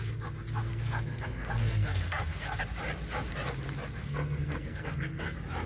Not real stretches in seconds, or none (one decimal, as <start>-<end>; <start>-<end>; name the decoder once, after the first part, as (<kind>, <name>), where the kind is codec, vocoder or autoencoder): 0.7-2.6 (codec, SNAC); 4.0-5.2